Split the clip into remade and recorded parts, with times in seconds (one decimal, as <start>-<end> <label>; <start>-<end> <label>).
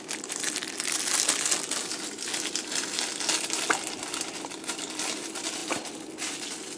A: 0.0-6.8 recorded